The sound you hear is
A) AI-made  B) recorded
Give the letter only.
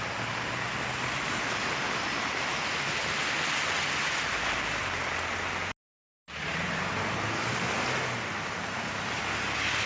B